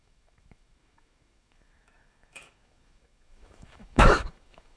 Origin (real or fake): fake